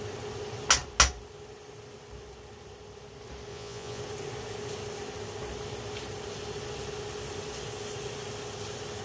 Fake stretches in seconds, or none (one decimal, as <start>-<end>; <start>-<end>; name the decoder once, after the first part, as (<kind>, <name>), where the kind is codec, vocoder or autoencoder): 3.5-4.0 (vocoder, Vocos)